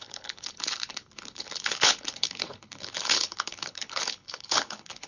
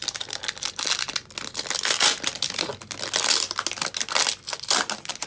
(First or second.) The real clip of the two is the second